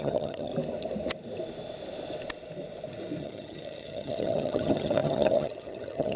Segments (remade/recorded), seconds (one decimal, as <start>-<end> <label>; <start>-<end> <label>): 0.0-0.5 remade; 0.5-3.2 recorded; 3.2-6.2 remade